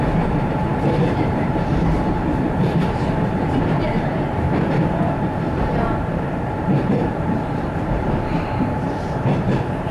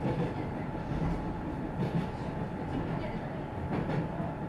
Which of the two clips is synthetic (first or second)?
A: first